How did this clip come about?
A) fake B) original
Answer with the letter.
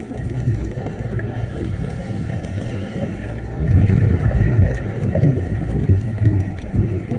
A